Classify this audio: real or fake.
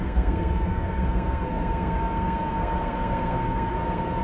fake